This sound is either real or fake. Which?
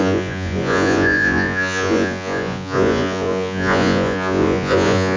fake